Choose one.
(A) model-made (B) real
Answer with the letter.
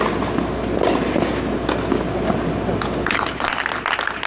B